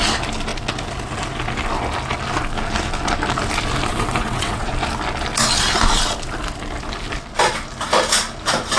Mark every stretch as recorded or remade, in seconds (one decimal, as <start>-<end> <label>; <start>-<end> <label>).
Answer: 0.0-3.9 recorded; 3.9-4.7 remade; 4.7-8.8 recorded

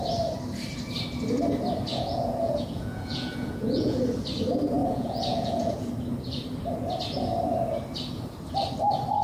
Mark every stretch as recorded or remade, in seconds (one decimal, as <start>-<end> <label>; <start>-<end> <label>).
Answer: 0.0-1.9 recorded; 1.9-4.0 remade; 4.0-4.8 recorded; 4.8-5.9 remade; 5.9-9.2 recorded